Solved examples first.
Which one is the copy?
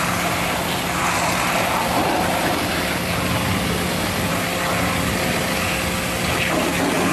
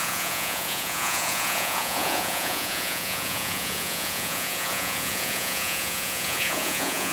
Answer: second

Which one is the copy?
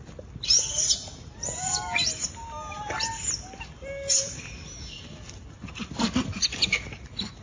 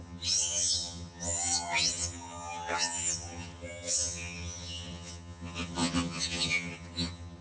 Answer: second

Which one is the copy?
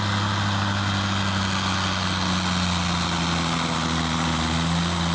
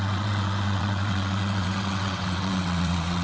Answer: second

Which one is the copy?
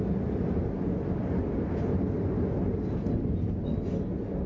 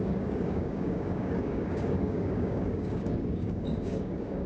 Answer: second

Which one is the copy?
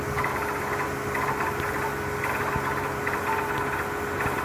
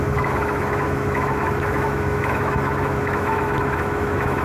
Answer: second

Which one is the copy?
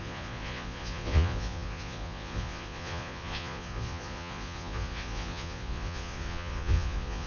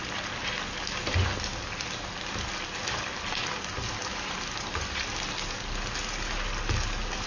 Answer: first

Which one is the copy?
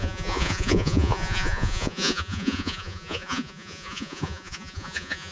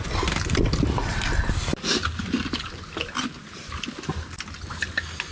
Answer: first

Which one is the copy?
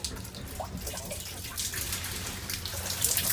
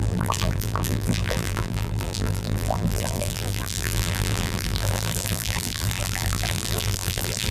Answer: second